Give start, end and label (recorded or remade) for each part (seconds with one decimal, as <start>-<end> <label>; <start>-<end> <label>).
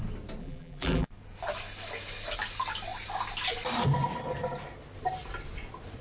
0.0-0.4 recorded; 0.4-1.1 remade; 1.1-6.0 recorded